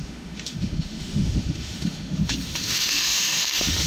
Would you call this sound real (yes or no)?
no